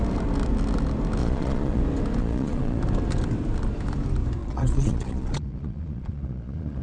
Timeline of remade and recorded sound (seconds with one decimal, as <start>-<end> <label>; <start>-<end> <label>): 0.0-1.2 recorded; 1.2-1.8 remade; 1.8-2.2 recorded; 2.2-2.8 remade; 2.8-4.4 recorded; 4.4-6.8 remade